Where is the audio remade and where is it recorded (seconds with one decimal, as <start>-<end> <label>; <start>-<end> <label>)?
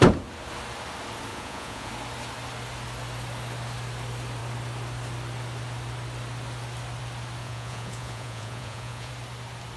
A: 0.0-1.3 recorded; 1.3-1.9 remade; 1.9-7.4 recorded; 7.4-9.1 remade; 9.1-9.8 recorded